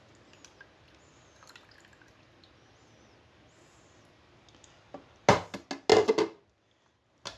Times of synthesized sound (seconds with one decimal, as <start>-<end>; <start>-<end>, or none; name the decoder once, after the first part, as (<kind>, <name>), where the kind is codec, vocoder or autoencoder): none

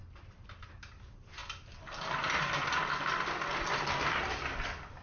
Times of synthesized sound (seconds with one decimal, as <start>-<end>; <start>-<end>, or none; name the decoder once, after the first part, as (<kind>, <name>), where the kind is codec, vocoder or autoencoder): none

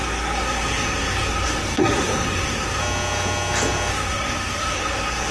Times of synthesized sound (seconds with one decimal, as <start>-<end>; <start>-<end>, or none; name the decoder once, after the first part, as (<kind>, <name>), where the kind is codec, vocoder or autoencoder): 0.0-2.8 (codec, SNAC); 3.9-5.3

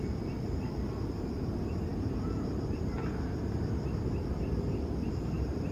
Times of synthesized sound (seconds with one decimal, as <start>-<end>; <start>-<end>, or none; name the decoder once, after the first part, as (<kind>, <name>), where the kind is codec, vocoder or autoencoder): none

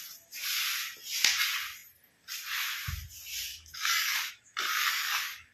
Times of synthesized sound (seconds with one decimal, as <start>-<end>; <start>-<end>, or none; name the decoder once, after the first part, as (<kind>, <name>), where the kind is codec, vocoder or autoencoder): 3.5-4.3 (codec, DAC); 4.7-5.5